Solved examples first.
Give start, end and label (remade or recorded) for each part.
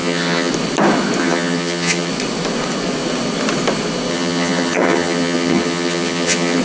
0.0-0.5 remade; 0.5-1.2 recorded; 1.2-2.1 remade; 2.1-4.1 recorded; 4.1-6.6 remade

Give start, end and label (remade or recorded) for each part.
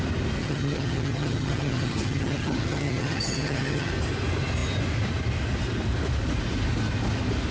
0.0-0.4 recorded; 0.4-3.9 remade; 3.9-7.5 recorded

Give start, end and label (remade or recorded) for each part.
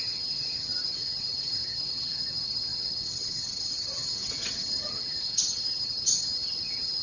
0.0-7.0 remade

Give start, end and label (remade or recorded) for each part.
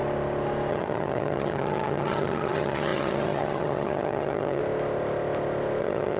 0.0-0.7 recorded; 0.7-4.6 remade; 4.6-5.8 recorded; 5.8-6.2 remade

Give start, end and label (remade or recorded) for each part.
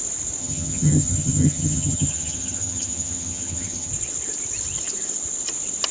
0.0-0.4 recorded; 0.4-3.9 remade; 3.9-5.9 recorded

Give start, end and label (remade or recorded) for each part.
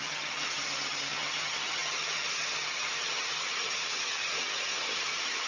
0.0-5.5 remade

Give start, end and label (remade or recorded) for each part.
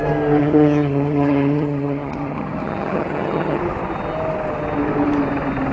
0.0-0.4 recorded; 0.4-3.6 remade; 3.6-5.7 recorded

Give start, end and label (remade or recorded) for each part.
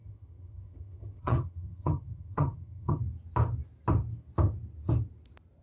0.0-3.0 remade; 3.0-5.6 recorded